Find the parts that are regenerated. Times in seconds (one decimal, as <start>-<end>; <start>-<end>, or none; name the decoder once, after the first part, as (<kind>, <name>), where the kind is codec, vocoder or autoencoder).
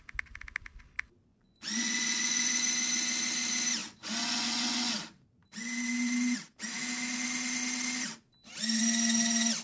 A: 1.3-2.6 (vocoder, Vocos); 3.8-4.9